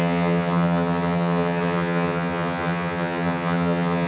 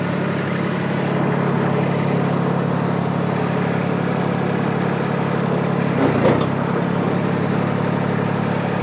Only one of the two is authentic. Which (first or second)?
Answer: second